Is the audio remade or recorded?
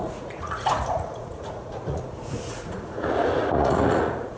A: remade